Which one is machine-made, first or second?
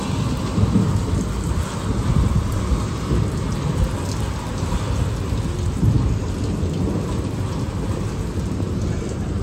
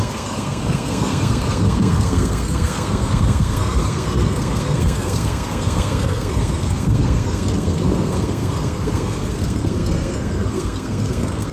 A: second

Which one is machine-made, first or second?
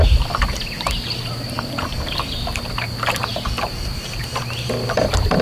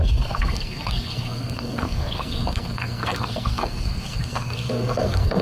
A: second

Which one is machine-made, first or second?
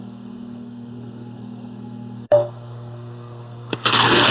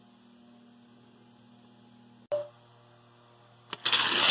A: first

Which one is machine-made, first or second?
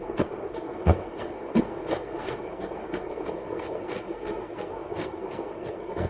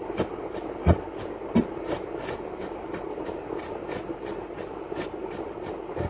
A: first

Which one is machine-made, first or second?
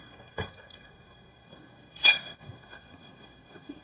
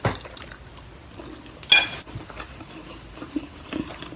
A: first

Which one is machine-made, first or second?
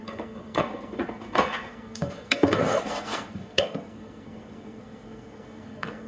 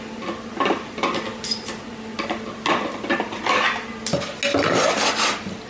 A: first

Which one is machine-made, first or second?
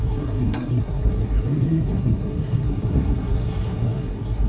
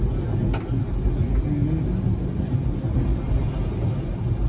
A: first